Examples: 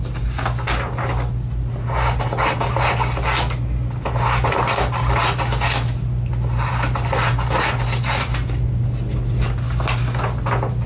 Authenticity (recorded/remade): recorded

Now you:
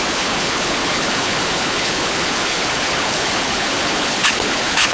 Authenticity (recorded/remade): remade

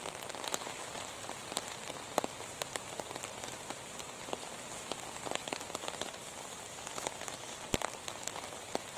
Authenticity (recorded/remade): recorded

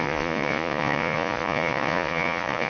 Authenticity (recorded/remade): remade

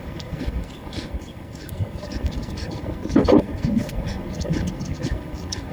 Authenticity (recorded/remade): remade